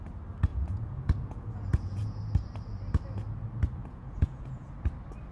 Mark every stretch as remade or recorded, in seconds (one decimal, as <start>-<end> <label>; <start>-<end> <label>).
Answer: 0.0-0.5 recorded; 0.5-2.2 remade; 2.2-3.8 recorded; 3.8-4.7 remade; 4.7-5.3 recorded